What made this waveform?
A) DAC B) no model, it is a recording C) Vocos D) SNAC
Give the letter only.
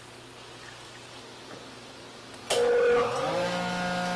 B